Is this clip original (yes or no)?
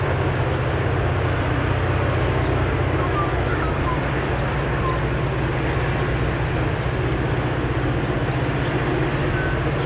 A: yes